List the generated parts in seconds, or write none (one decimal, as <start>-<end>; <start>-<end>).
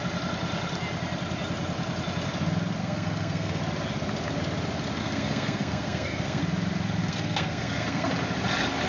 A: 2.8-3.6; 5.0-6.4; 7.0-8.1